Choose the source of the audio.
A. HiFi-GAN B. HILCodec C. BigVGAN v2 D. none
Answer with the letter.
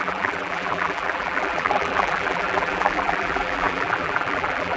C